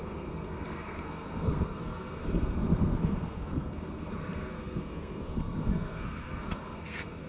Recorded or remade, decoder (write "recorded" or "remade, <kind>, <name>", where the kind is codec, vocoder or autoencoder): remade, codec, SNAC